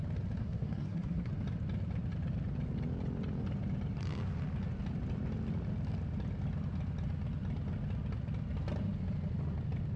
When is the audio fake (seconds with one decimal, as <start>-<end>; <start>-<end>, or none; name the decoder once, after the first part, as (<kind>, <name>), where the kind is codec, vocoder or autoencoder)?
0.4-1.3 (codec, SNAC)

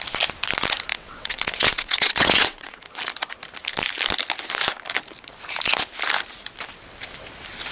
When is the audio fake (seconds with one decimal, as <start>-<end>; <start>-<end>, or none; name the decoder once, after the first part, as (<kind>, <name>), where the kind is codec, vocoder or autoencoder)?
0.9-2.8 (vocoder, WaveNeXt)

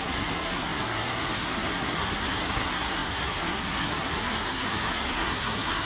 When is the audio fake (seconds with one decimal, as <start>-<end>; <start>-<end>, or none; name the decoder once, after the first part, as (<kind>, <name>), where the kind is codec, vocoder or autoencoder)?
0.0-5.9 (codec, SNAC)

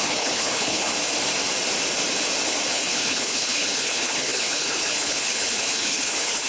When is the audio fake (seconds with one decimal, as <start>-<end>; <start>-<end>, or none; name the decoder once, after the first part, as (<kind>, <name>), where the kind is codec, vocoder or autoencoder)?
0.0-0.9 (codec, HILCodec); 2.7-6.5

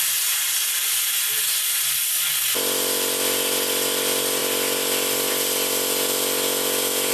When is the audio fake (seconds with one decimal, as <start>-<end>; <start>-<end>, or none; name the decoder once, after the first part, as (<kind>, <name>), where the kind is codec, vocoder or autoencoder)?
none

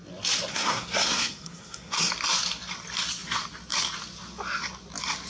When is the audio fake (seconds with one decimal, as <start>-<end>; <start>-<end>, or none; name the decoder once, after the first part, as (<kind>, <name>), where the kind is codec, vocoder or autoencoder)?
0.5-2.1 (codec, SNAC)